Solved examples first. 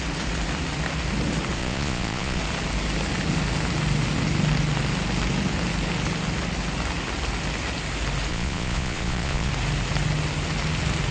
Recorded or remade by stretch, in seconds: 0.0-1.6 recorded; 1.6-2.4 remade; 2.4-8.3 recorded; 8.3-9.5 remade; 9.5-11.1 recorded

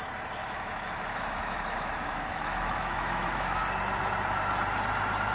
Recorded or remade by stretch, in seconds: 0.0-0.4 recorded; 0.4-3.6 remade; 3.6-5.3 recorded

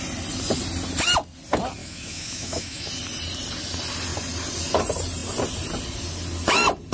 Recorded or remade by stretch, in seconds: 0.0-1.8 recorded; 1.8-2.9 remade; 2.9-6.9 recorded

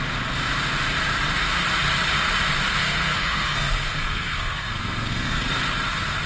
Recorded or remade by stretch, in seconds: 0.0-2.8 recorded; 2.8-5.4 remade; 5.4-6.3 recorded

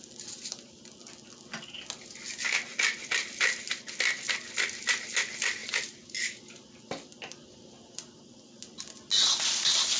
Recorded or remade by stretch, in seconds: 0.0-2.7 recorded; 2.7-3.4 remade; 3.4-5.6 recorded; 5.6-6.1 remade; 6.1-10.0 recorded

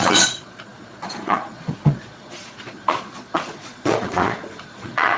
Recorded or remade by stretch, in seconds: 0.0-5.2 remade

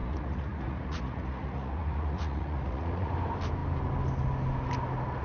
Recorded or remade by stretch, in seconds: 0.0-3.1 remade; 3.1-5.2 recorded